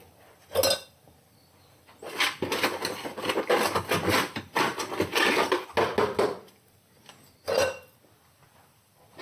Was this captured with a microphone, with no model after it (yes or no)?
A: yes